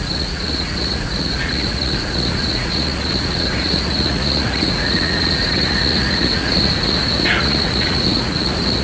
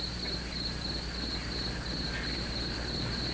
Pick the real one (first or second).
second